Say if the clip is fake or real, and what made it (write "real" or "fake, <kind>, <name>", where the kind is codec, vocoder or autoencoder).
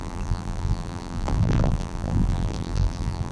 fake, vocoder, BigVGAN v2